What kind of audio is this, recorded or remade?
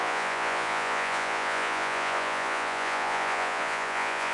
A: remade